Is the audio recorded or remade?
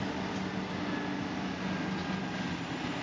recorded